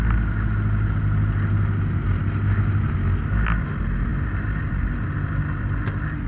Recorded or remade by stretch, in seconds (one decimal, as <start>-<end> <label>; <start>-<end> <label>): 0.0-6.3 recorded